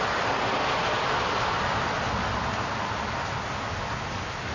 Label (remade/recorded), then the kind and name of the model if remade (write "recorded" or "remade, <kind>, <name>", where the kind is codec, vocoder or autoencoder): recorded